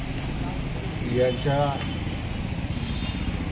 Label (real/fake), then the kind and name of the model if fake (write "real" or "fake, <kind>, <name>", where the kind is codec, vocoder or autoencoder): real